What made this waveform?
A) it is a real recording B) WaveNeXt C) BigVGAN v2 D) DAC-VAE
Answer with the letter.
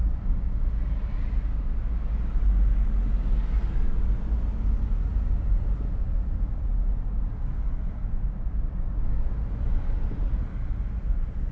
A